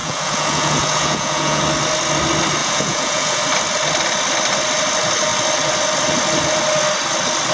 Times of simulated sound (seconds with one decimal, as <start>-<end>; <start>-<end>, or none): 0.0-1.6; 2.6-3.4